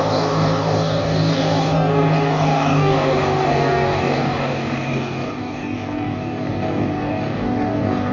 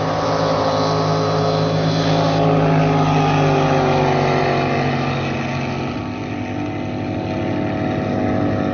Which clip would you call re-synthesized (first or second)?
first